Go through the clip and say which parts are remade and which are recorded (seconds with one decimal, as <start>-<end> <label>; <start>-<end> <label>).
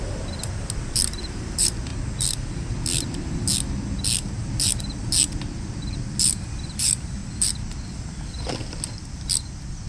0.0-1.9 remade; 1.9-6.4 recorded; 6.4-7.2 remade; 7.2-7.9 recorded; 7.9-9.9 remade